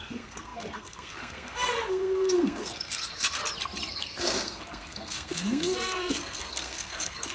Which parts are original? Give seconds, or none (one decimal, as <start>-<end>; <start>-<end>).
3.4-3.9